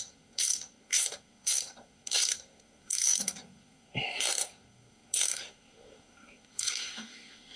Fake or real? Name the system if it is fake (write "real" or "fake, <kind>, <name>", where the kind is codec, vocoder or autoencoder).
fake, codec, SNAC